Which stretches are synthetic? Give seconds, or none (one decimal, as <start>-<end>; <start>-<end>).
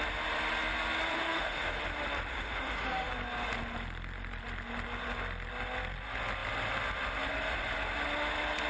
1.1-1.8; 2.3-3.1